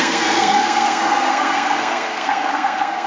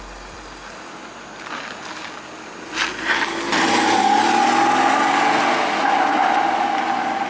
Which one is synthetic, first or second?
first